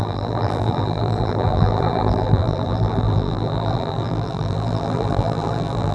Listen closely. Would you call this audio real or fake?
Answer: fake